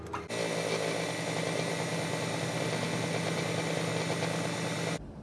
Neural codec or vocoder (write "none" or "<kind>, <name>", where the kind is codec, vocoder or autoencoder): none